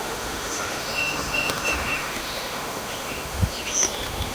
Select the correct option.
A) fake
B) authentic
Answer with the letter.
A